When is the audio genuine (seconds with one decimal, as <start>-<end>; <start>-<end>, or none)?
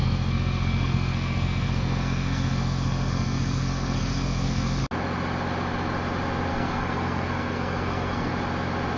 4.8-6.5; 8.3-9.0